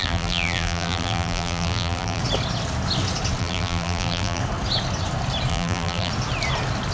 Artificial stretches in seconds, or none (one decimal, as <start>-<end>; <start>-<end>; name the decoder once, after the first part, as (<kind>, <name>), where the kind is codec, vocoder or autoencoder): 0.0-2.2 (vocoder, BigVGAN v2); 3.4-4.4; 5.5-6.1